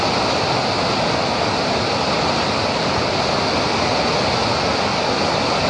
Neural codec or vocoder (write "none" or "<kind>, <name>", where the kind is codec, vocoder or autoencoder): none